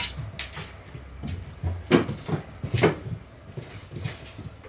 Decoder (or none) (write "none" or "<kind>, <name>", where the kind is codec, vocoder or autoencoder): none